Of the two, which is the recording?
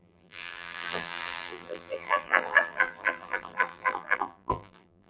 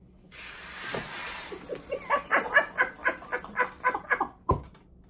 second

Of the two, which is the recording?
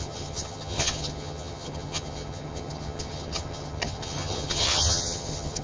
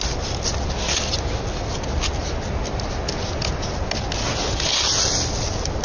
second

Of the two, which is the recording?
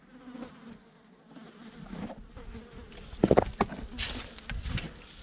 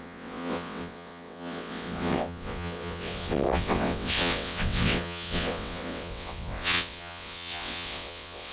first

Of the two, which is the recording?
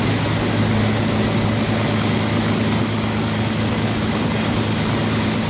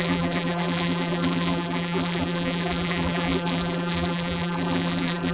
first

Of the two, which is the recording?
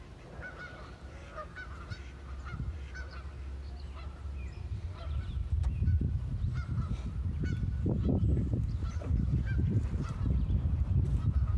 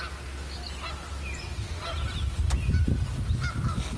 second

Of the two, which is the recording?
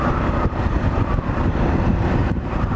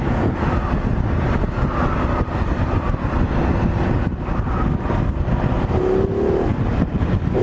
second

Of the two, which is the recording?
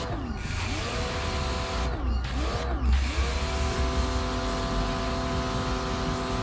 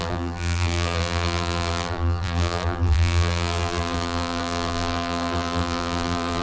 first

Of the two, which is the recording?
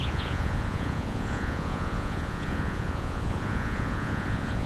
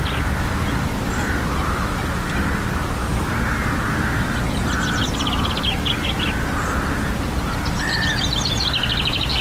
second